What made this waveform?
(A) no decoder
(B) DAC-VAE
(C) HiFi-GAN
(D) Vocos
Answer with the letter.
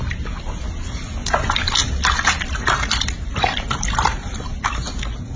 A